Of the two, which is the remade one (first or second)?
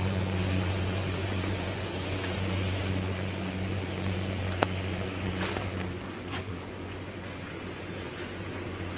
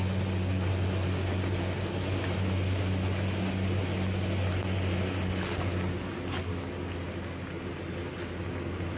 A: first